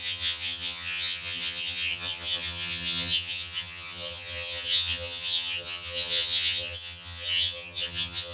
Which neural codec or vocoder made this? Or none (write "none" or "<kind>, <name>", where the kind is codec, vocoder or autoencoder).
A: vocoder, HiFi-GAN